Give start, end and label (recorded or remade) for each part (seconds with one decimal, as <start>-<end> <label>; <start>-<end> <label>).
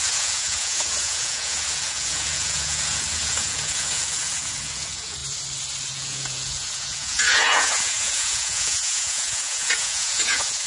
0.0-5.2 remade; 5.2-5.9 recorded; 5.9-10.7 remade